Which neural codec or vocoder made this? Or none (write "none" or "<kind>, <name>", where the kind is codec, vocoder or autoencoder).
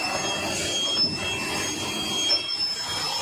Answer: none